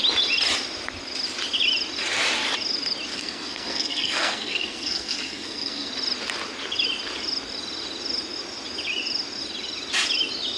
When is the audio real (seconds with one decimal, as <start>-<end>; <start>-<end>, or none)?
0.0-3.1; 5.9-10.6